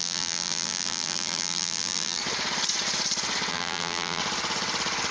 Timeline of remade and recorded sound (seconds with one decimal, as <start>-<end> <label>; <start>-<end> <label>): 0.0-2.2 remade; 2.2-3.5 recorded; 3.5-4.2 remade; 4.2-5.1 recorded